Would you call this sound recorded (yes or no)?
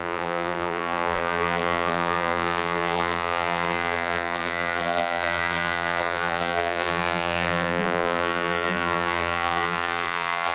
no